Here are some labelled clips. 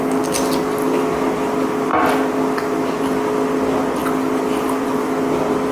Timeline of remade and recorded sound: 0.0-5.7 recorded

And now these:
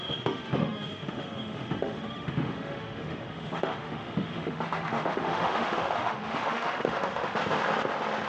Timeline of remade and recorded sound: 0.0-7.4 remade; 7.4-8.3 recorded

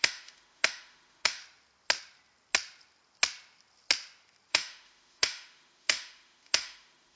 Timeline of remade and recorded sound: 0.0-1.4 remade; 1.4-4.5 recorded; 4.5-7.2 remade

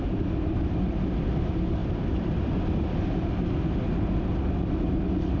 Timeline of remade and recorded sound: 0.0-5.4 recorded

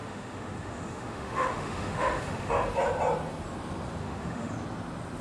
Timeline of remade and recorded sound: 0.0-2.5 remade; 2.5-4.0 recorded; 4.0-4.5 remade; 4.5-5.2 recorded

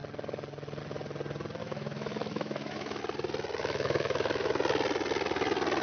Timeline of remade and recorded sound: 0.0-1.6 recorded; 1.6-3.0 remade; 3.0-3.6 recorded; 3.6-4.5 remade; 4.5-5.8 recorded

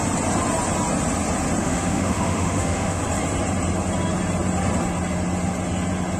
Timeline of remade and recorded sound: 0.0-1.6 recorded; 1.6-3.0 remade; 3.0-6.2 recorded